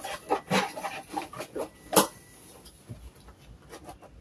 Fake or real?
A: real